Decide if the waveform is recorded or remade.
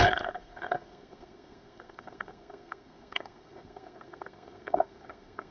remade